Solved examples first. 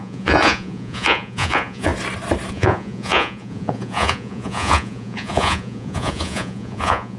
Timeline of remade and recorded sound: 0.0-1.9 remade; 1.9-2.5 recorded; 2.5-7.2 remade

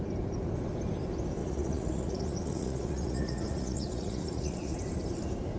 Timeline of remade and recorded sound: 0.0-1.4 recorded; 1.4-4.8 remade; 4.8-5.6 recorded

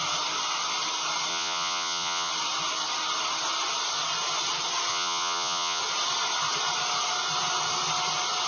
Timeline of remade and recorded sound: 0.0-1.3 recorded; 1.3-2.3 remade; 2.3-4.9 recorded; 4.9-5.8 remade; 5.8-8.5 recorded

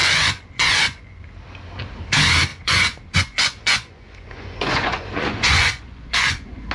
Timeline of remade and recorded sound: 0.0-1.2 remade; 1.2-2.5 recorded; 2.5-6.7 remade

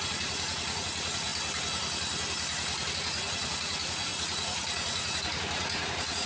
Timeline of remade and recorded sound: 0.0-1.3 remade; 1.3-2.9 recorded; 2.9-6.3 remade